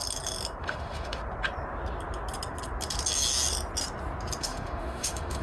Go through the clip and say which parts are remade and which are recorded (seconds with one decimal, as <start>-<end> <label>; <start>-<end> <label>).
0.0-0.6 recorded; 0.6-1.2 remade; 1.2-4.4 recorded; 4.4-5.4 remade